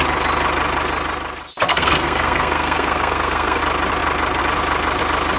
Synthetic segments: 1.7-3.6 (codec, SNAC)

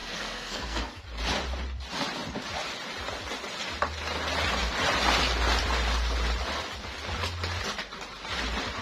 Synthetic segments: 0.0-1.0 (codec, SNAC)

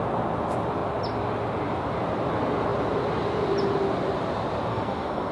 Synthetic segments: 4.7-5.3 (codec, SNAC)

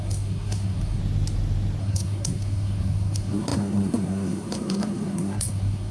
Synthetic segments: 0.0-1.0 (codec, SNAC); 1.8-5.9